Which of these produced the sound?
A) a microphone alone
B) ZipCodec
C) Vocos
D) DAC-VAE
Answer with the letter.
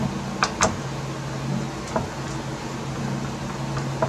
A